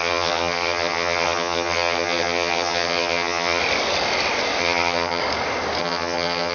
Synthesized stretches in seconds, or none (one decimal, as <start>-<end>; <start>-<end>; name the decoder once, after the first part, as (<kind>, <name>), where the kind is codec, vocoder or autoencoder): 0.0-3.6 (vocoder, HiFi-GAN); 4.6-5.2; 5.8-6.5